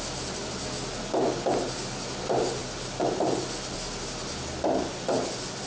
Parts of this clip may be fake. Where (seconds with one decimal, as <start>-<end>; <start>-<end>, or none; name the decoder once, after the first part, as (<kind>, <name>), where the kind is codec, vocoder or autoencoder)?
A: none